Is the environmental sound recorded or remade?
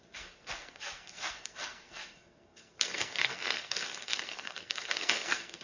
remade